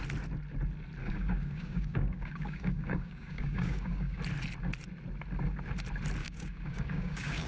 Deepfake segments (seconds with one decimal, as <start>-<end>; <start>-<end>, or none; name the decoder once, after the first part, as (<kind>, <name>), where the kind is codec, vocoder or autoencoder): 1.0-4.2 (codec, DAC); 6.2-7.5